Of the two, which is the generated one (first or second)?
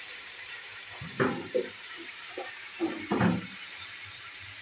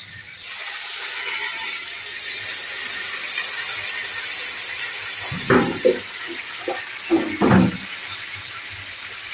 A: first